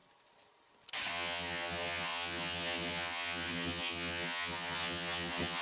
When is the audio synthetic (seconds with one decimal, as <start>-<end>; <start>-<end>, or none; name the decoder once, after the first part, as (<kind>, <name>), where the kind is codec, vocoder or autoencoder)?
1.1-5.6 (vocoder, HiFi-GAN)